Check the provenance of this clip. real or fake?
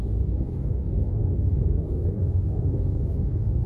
fake